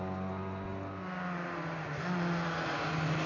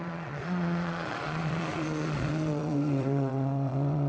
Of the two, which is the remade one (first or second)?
second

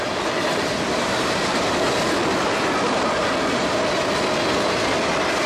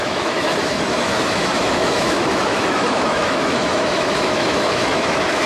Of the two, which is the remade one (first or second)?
second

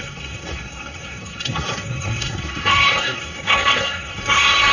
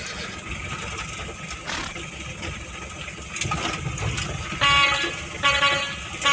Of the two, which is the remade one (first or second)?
first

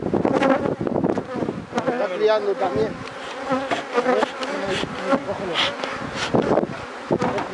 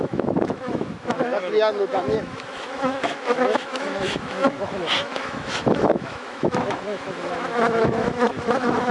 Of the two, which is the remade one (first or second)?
second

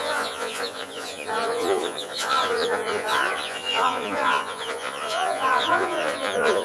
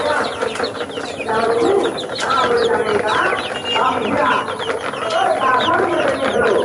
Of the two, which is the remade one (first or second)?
first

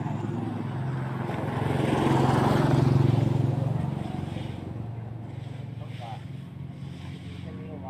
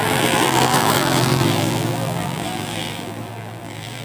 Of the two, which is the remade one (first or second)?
second